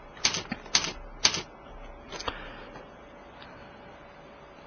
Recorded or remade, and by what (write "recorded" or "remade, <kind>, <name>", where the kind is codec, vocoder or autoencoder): recorded